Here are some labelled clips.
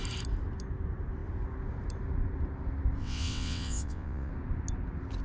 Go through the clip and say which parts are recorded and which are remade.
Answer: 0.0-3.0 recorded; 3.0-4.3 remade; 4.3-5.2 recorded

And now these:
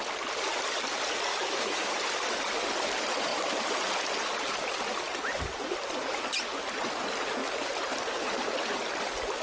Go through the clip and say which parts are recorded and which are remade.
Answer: 0.0-1.3 recorded; 1.3-1.9 remade; 1.9-9.4 recorded

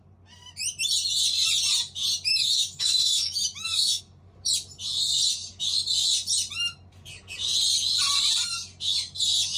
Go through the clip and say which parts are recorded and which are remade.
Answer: 0.0-2.3 recorded; 2.3-4.0 remade; 4.0-9.6 recorded